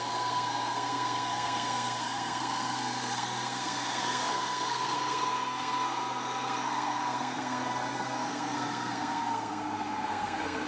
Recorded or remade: remade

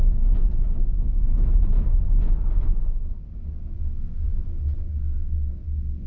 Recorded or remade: recorded